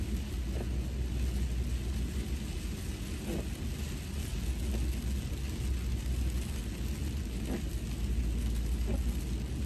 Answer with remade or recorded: recorded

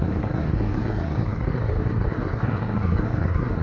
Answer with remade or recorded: remade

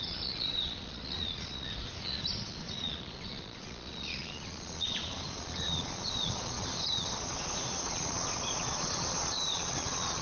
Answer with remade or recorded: remade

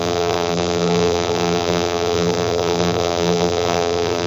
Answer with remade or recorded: remade